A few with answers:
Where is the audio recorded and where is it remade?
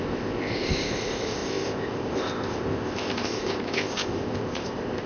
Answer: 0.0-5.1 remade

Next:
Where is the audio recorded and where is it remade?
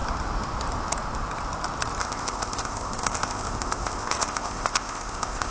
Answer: 0.0-2.0 recorded; 2.0-5.5 remade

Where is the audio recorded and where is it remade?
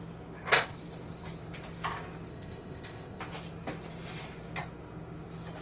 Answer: 0.0-2.3 recorded; 2.3-3.2 remade; 3.2-5.6 recorded